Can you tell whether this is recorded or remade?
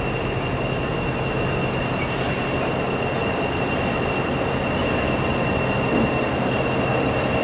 recorded